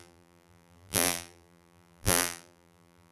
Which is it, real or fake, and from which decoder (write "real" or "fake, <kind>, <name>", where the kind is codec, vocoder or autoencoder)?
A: fake, vocoder, BigVGAN v2